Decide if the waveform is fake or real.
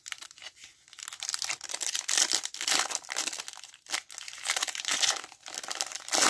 real